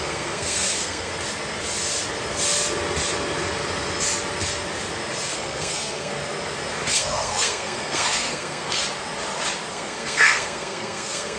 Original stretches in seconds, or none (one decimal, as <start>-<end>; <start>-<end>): 1.1-5.3; 6.1-6.9; 8.8-9.7